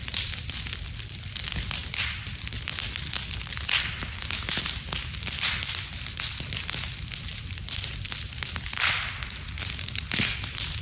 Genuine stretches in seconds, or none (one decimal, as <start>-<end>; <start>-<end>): 0.0-10.8